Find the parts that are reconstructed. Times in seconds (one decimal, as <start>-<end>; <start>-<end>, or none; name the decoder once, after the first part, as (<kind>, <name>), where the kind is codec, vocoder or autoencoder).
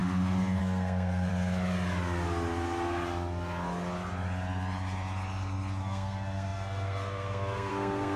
0.6-1.3 (codec, SNAC); 5.8-8.2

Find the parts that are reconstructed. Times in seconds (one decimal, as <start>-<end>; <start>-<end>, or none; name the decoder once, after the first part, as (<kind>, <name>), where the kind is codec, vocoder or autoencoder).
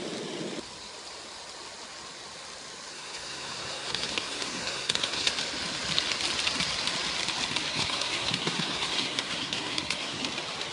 2.9-5.3 (codec, SNAC); 7.7-10.2